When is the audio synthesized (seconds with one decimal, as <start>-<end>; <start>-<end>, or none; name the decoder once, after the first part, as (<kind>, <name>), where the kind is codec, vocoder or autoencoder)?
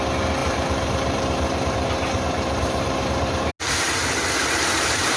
0.4-3.5 (vocoder, BigVGAN v2); 4.4-5.2